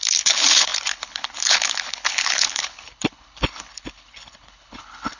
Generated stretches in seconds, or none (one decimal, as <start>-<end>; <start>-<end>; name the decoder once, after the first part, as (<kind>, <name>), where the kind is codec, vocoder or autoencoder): 0.0-5.2 (codec, HILCodec)